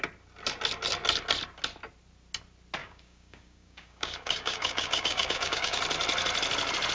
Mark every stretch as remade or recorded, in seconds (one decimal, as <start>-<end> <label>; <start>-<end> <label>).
0.0-2.8 recorded; 2.8-5.8 remade; 5.8-6.9 recorded